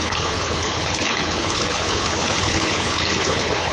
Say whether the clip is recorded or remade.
remade